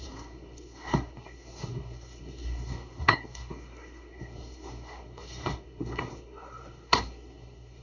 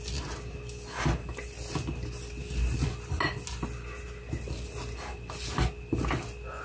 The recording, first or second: second